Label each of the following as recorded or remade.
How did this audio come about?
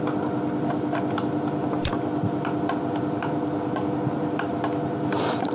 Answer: remade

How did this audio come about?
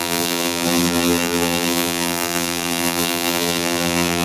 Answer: remade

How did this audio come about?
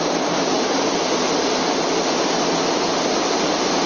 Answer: recorded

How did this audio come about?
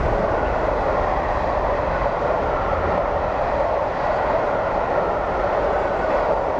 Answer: recorded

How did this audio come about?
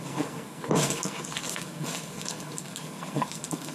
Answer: remade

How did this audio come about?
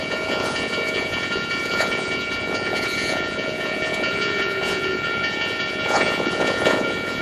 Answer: remade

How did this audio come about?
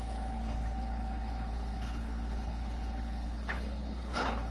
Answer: remade